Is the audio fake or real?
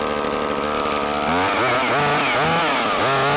real